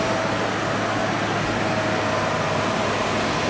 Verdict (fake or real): real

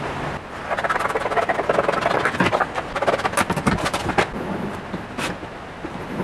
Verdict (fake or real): real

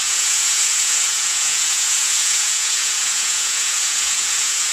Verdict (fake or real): fake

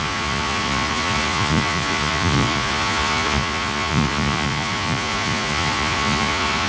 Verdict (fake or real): fake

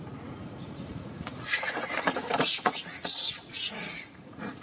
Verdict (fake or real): fake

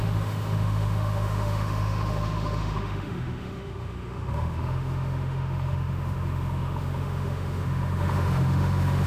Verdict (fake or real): fake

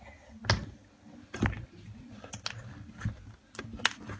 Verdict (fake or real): real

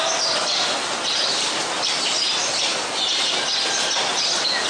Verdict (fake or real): real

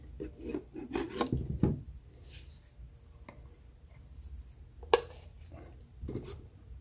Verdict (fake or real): real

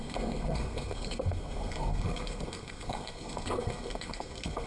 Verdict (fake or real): fake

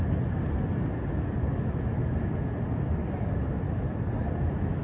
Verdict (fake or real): real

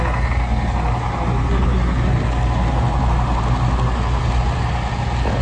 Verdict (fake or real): real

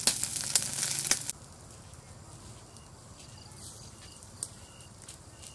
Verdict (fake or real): real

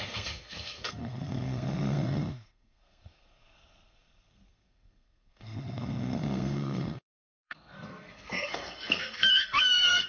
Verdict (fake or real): fake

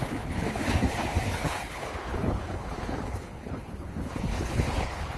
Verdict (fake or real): fake